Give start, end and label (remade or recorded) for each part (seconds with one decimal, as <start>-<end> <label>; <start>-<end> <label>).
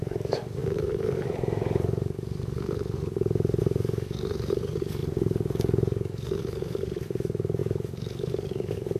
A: 0.0-9.0 remade